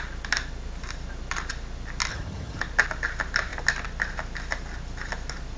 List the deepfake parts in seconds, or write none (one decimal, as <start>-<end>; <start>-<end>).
2.1-2.6

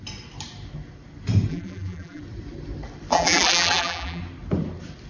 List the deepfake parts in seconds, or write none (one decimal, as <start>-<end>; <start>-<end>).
1.5-2.2; 3.1-4.2

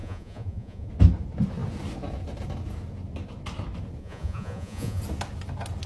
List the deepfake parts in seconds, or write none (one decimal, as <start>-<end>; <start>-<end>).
0.0-0.9; 4.0-5.0